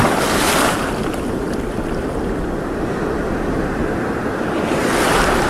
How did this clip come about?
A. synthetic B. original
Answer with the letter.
A